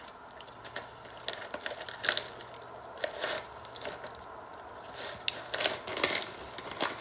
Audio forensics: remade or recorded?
recorded